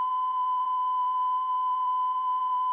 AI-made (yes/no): yes